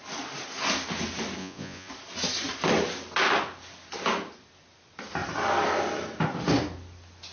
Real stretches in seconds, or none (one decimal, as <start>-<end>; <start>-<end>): 0.0-1.4; 1.9-7.3